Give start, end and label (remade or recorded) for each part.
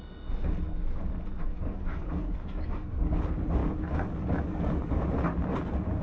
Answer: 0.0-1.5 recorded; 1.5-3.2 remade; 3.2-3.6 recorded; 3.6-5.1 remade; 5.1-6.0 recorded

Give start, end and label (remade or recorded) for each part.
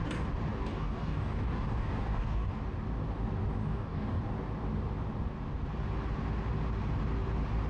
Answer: 0.0-0.5 recorded; 0.5-2.5 remade; 2.5-3.6 recorded; 3.6-4.2 remade; 4.2-7.7 recorded